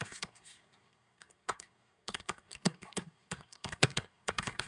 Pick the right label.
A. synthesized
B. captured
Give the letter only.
A